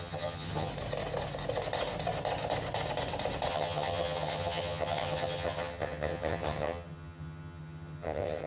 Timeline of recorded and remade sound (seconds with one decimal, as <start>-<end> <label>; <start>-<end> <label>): 0.0-0.7 remade; 0.7-3.5 recorded; 3.5-8.5 remade